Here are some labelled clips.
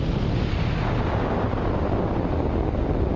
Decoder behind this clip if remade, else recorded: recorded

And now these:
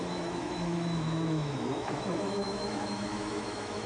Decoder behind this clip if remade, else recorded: remade, autoencoder, DAC-VAE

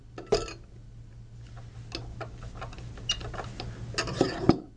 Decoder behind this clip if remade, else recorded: recorded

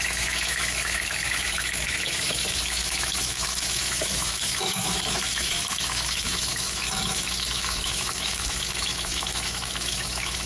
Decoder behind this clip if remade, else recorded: remade, autoencoder, DAC-VAE